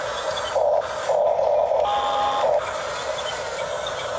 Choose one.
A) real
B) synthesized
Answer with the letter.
A